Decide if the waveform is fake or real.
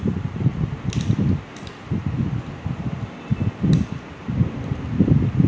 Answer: real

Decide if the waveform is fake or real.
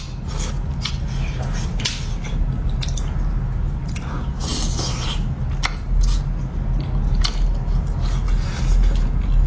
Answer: real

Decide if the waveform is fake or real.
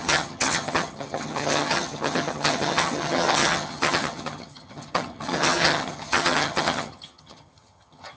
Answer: fake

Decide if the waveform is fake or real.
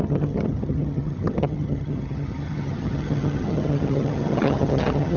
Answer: fake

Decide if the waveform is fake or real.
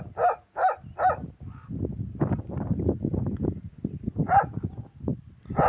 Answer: real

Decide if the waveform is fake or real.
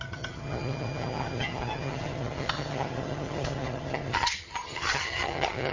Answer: fake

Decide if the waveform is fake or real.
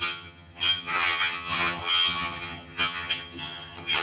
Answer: fake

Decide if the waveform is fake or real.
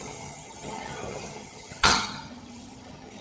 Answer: fake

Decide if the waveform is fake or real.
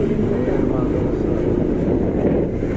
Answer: real